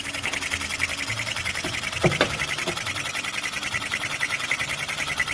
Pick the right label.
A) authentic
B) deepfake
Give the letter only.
A